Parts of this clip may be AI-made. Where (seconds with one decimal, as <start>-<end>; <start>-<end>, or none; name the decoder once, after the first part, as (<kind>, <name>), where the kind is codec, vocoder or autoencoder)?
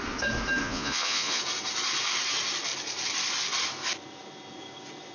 0.6-1.4 (vocoder, Vocos)